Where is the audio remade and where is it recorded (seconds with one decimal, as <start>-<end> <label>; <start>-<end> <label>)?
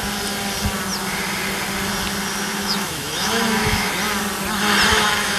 0.0-2.5 recorded; 2.5-3.9 remade; 3.9-4.9 recorded; 4.9-5.4 remade